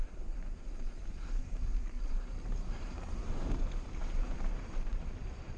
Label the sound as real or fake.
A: fake